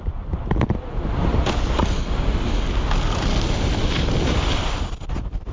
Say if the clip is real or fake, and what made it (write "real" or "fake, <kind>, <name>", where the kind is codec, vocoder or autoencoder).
real